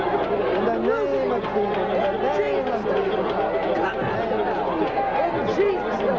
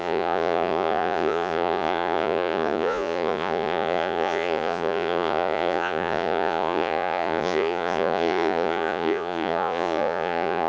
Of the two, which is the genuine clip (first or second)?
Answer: first